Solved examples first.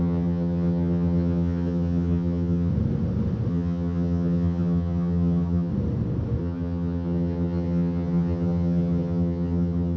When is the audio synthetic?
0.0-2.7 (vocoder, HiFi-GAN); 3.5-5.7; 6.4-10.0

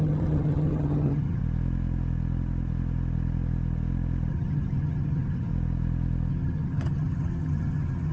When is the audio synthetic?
0.0-1.4 (vocoder, HiFi-GAN); 4.3-5.5; 6.3-8.1

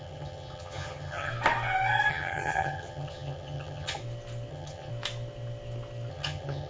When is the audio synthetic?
0.0-1.3 (vocoder, HiFi-GAN); 2.1-4.0; 4.5-4.9; 6.1-6.7

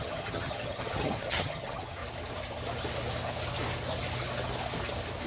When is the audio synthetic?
0.0-2.0 (vocoder, HiFi-GAN)

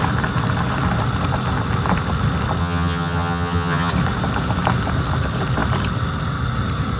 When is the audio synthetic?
2.6-3.9 (vocoder, HiFi-GAN)